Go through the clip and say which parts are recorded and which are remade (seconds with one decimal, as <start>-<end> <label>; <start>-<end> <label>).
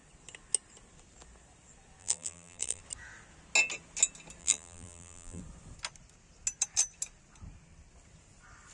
0.0-2.0 recorded; 2.0-2.8 remade; 2.8-4.4 recorded; 4.4-5.4 remade; 5.4-8.7 recorded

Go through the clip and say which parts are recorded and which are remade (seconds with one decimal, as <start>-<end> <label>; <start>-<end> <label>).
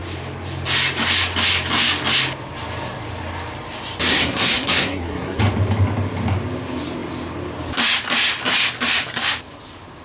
0.0-4.1 recorded; 4.1-5.4 remade; 5.4-10.0 recorded